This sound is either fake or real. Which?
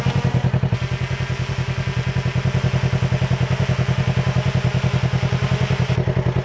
real